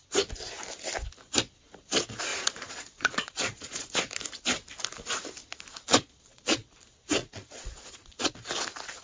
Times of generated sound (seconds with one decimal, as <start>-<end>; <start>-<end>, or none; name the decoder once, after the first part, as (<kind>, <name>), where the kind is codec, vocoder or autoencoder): 2.3-4.0 (vocoder, Vocos); 5.9-6.7; 7.2-8.3